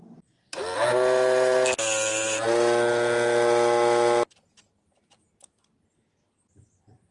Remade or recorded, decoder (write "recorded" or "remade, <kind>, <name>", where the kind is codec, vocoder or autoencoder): recorded